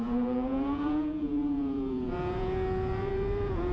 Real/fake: fake